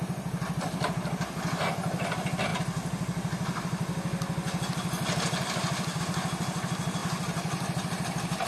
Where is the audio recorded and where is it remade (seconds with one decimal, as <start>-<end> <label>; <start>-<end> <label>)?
0.0-8.5 recorded

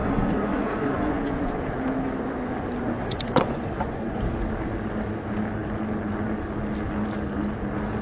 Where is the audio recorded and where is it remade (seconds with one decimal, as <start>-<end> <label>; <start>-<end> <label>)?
0.0-1.6 remade; 1.6-2.8 recorded; 2.8-4.2 remade; 4.2-8.0 recorded

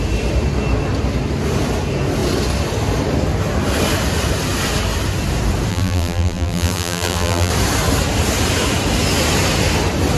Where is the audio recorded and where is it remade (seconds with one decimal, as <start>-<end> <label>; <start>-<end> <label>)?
0.0-5.7 recorded; 5.7-7.5 remade; 7.5-10.2 recorded

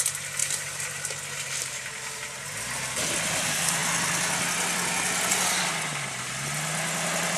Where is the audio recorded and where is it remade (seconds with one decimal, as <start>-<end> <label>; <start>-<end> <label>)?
0.0-7.4 recorded

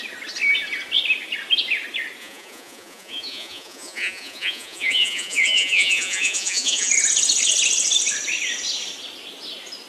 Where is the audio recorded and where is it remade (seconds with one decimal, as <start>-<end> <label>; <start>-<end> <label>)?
0.0-2.2 recorded; 2.2-6.9 remade; 6.9-9.9 recorded

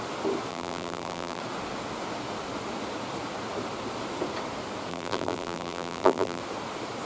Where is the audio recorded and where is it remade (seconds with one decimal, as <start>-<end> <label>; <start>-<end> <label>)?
0.0-0.5 recorded; 0.5-1.4 remade; 1.4-4.9 recorded; 4.9-6.4 remade; 6.4-7.1 recorded

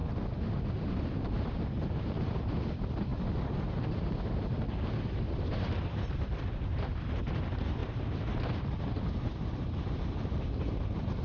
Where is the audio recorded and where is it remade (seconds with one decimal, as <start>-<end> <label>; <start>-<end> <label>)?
0.0-1.0 recorded; 1.0-3.1 remade; 3.1-3.7 recorded; 3.7-11.2 remade